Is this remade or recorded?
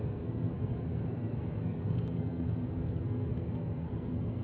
remade